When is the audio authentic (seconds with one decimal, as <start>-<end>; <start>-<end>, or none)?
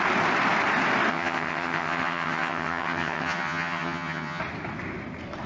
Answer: 0.0-1.1; 4.4-5.5